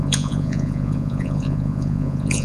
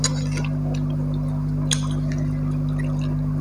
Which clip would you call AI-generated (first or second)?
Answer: first